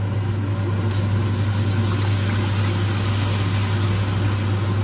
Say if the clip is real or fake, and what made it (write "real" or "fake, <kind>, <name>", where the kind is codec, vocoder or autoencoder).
real